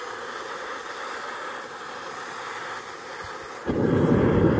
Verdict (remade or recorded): recorded